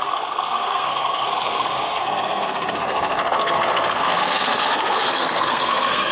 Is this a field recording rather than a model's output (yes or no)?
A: no